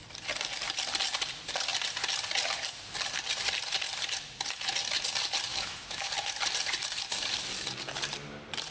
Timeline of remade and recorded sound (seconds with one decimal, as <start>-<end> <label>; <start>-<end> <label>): 0.0-5.5 recorded; 5.5-6.1 remade; 6.1-8.7 recorded